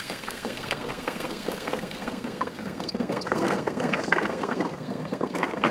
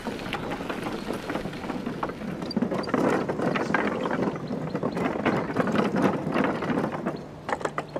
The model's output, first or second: first